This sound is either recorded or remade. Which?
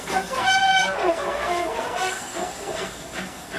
remade